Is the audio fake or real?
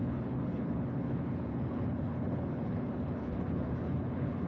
fake